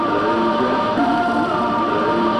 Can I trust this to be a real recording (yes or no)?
no